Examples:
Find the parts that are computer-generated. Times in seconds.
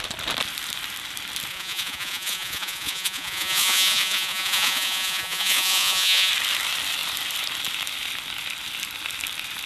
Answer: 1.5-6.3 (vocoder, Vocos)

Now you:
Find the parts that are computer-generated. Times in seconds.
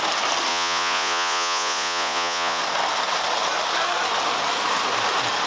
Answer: 0.5-2.6 (vocoder, Vocos)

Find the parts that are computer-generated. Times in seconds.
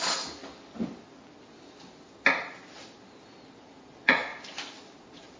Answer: 0.0-0.4 (vocoder, Vocos); 3.6-4.3; 5.0-5.4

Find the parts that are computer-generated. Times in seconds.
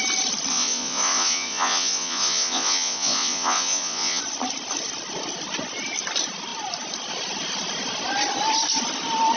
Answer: 0.5-4.2 (vocoder, Vocos)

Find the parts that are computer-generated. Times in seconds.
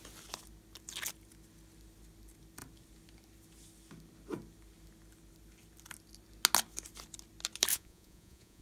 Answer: 7.7-8.6 (vocoder, Vocos)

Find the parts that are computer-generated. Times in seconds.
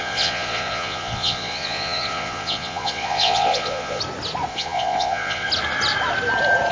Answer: 0.0-4.0 (vocoder, Vocos); 4.5-5.5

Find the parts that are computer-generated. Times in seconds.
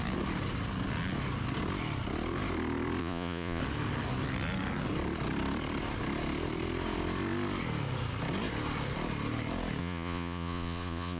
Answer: 3.0-3.6 (vocoder, Vocos); 9.8-11.2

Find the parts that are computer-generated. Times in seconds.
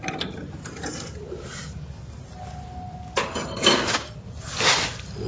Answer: none